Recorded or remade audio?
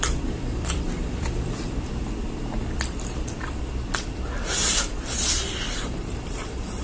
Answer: remade